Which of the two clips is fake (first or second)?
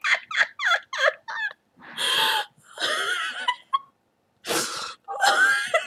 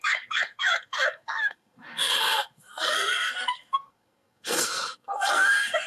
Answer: second